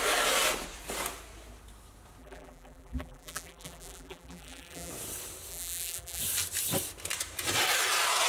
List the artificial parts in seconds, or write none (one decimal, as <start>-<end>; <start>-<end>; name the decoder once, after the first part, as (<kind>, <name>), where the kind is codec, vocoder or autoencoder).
2.2-4.9 (vocoder, BigVGAN v2); 5.5-6.2